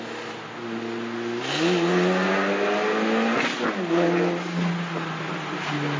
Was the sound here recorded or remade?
recorded